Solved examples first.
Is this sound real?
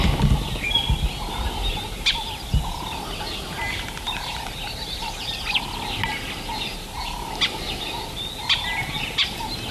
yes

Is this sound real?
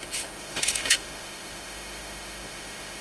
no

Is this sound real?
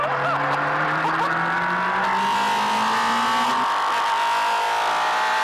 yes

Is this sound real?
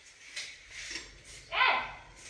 yes